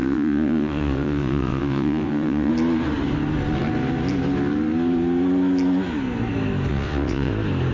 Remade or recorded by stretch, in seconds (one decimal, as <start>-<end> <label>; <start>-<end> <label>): 0.0-2.5 remade; 2.5-6.7 recorded; 6.7-7.3 remade; 7.3-7.7 recorded